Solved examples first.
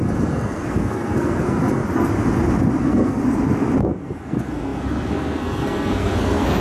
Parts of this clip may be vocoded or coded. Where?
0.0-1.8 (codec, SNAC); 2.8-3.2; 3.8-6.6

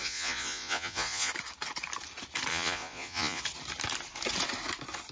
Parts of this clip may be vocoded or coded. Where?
0.0-1.3 (vocoder, Vocos); 2.5-3.4

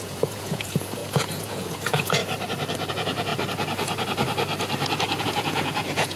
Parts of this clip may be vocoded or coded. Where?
0.0-2.2 (vocoder, Vocos); 2.9-3.3; 5.2-6.2

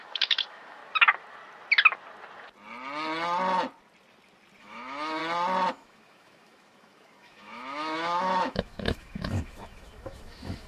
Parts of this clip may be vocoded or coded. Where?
0.0-0.8 (autoencoder, DAC-VAE); 4.6-5.2; 5.7-10.7